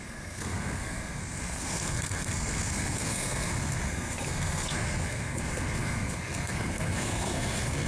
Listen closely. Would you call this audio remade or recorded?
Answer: remade